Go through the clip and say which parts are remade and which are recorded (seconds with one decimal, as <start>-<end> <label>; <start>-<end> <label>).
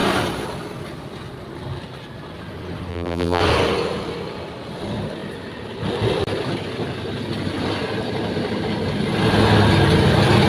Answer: 0.0-2.9 recorded; 2.9-3.4 remade; 3.4-10.5 recorded